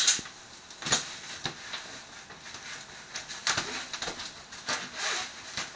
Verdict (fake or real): real